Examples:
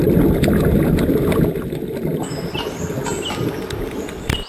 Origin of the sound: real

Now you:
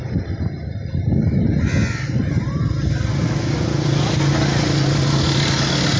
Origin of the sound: real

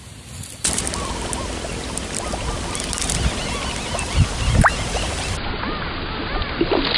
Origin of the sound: real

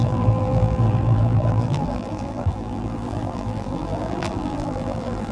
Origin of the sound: fake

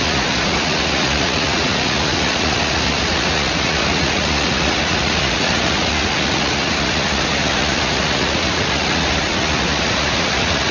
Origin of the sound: fake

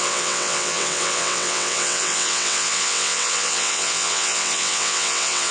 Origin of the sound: fake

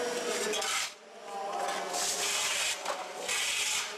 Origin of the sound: real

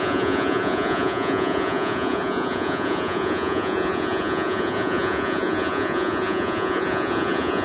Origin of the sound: fake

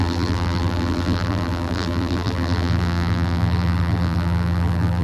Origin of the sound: fake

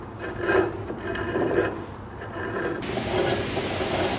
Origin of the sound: real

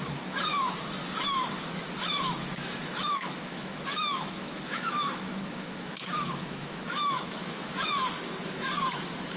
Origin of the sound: fake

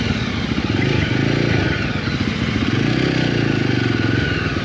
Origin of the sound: real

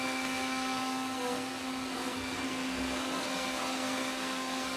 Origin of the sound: fake